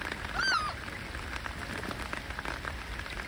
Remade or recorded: recorded